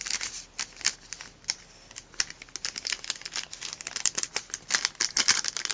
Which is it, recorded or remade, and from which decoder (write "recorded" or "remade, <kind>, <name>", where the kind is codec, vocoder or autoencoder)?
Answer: recorded